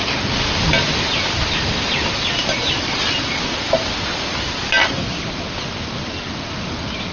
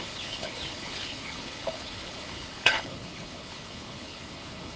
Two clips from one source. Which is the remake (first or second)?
second